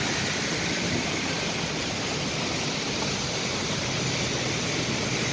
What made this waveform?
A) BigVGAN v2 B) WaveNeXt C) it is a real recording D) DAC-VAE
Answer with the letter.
A